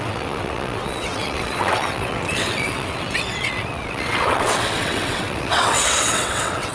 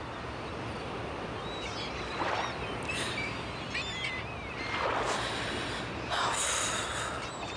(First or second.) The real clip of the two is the second